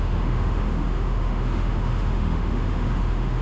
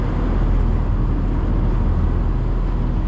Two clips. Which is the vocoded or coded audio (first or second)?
first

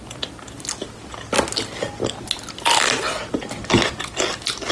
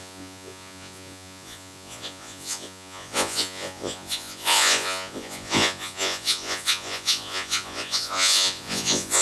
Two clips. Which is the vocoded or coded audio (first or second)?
second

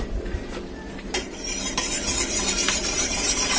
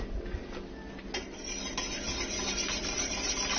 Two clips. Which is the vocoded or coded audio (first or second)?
first